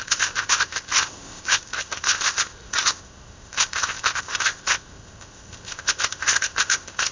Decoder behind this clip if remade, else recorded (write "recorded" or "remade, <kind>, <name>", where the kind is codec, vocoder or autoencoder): remade, codec, ZipCodec